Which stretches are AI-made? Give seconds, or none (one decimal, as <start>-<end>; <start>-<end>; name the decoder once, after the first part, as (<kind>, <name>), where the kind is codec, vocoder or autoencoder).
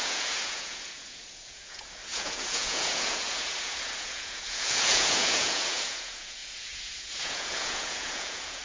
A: 0.0-8.6 (vocoder, Vocos)